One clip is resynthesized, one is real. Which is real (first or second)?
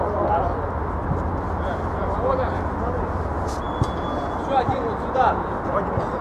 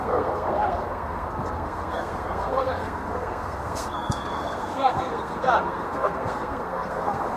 first